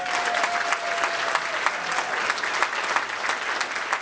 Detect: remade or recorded recorded